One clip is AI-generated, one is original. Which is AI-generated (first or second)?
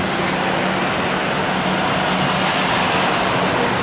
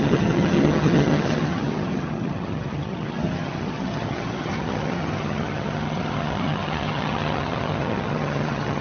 second